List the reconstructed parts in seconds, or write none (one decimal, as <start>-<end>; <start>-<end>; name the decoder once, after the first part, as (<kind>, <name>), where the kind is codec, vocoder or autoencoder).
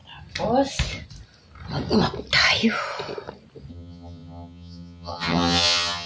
3.7-6.1 (vocoder, HiFi-GAN)